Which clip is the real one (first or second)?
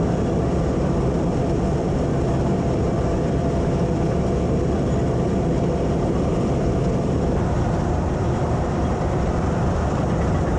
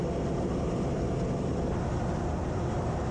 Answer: second